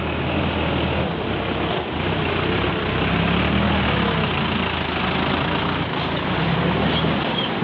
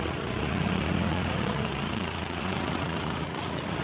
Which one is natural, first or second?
first